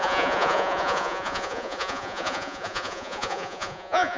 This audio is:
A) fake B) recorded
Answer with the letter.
A